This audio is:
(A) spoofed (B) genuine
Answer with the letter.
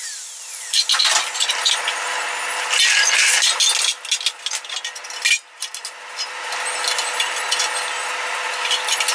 B